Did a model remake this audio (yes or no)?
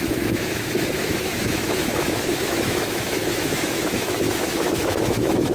yes